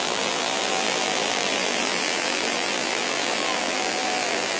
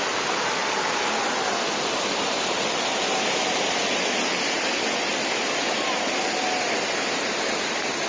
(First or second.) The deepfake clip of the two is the first